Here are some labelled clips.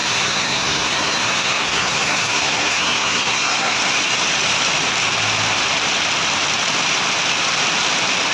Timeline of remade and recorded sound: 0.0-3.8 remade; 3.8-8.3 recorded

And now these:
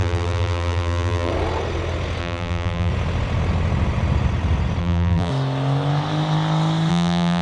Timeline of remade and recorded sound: 0.0-1.3 remade; 1.3-2.2 recorded; 2.2-2.9 remade; 2.9-4.8 recorded; 4.8-5.3 remade; 5.3-6.9 recorded; 6.9-7.4 remade

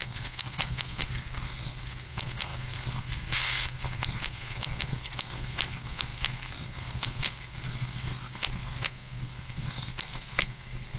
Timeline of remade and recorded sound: 0.0-11.0 remade

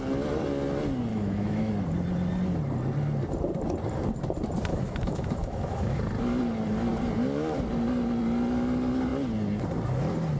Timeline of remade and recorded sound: 0.0-1.1 recorded; 1.1-1.7 remade; 1.7-4.7 recorded; 4.7-6.0 remade; 6.0-10.4 recorded

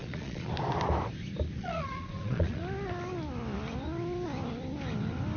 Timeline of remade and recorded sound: 0.0-0.5 remade; 0.5-1.6 recorded; 1.6-2.6 remade; 2.6-5.4 recorded